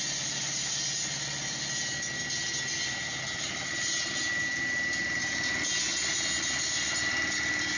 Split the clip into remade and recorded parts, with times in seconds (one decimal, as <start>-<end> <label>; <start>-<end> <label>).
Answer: 0.0-7.8 recorded